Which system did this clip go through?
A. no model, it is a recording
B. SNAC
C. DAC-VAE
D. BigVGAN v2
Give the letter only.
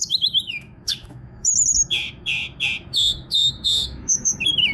C